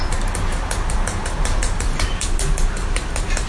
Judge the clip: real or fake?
real